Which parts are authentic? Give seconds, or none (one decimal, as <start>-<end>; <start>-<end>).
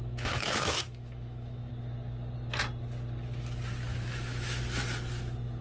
1.7-3.9; 4.6-5.6